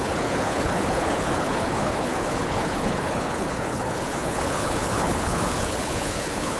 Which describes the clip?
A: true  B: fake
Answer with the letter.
B